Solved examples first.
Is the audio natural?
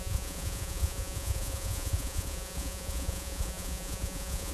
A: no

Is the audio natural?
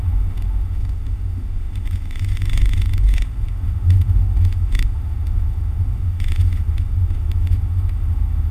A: no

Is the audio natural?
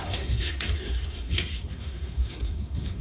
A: no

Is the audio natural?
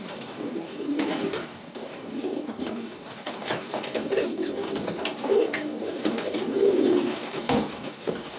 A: no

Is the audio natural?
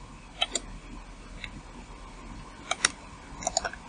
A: yes